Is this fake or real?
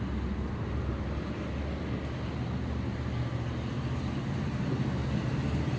real